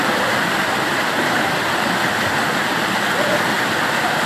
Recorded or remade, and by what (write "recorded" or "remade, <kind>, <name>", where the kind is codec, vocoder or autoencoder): recorded